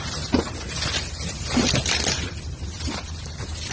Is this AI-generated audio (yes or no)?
yes